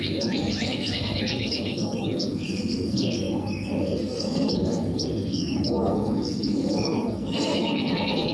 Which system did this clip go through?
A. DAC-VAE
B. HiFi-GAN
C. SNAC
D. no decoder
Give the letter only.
C